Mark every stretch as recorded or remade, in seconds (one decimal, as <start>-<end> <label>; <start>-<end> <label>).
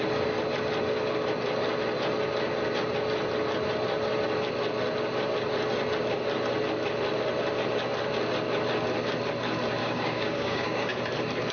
0.0-9.8 recorded; 9.8-11.0 remade; 11.0-11.5 recorded